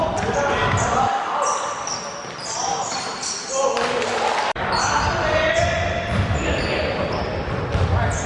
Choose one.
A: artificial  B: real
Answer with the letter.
B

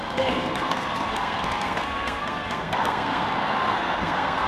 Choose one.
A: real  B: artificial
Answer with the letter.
B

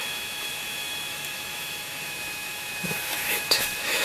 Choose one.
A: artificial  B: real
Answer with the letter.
A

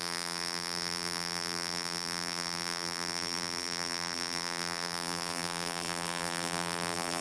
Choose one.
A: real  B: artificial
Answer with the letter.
B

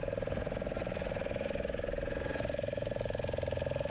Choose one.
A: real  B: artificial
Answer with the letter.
A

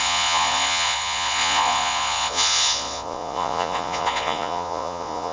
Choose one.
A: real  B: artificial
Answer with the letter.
B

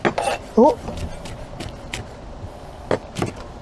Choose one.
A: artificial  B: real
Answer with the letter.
B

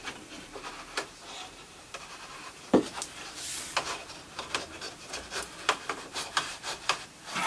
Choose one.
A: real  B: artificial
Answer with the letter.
B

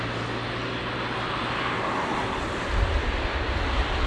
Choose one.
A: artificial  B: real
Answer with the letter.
B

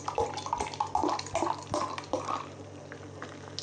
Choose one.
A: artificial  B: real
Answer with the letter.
B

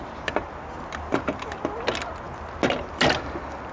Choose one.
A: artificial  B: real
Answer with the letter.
B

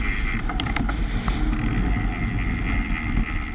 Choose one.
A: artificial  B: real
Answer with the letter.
B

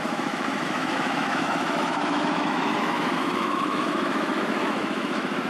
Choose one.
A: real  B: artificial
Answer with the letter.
B